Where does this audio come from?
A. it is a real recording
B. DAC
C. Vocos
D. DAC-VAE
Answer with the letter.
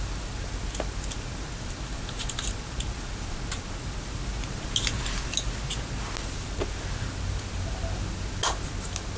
A